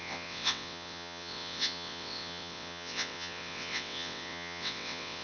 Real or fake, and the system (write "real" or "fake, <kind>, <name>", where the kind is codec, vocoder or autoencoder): fake, vocoder, WaveNeXt